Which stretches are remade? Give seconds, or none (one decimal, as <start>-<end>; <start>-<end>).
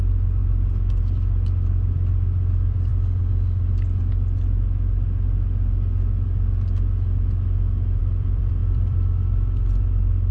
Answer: 0.0-0.4; 1.0-2.9; 8.0-10.3